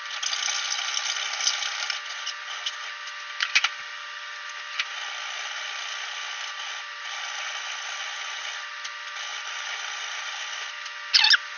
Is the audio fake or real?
real